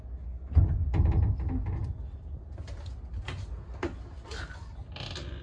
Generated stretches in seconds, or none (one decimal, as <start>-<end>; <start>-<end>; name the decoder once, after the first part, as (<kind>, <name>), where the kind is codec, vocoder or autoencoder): none